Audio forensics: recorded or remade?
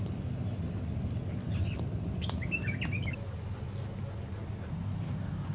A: recorded